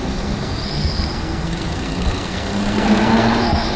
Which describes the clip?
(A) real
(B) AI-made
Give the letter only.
B